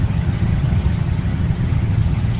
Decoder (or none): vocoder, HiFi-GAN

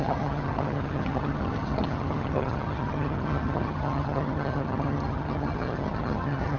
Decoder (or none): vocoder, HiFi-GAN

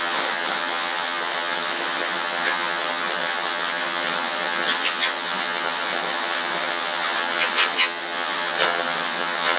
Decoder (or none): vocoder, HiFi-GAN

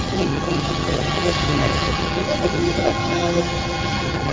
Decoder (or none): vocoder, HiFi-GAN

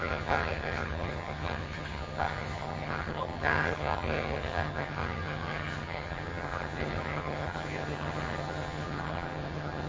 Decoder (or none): vocoder, HiFi-GAN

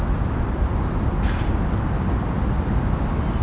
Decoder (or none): none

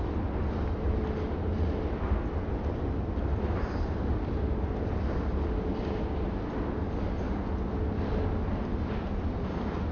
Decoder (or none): none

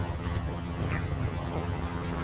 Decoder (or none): vocoder, HiFi-GAN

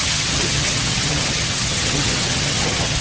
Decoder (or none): vocoder, HiFi-GAN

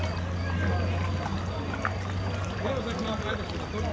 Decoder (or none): none